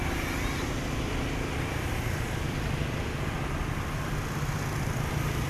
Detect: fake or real real